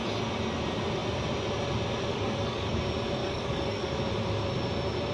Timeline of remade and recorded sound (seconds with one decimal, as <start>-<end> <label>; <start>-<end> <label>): 0.0-2.1 recorded; 2.1-2.8 remade; 2.8-3.2 recorded; 3.2-4.0 remade; 4.0-5.1 recorded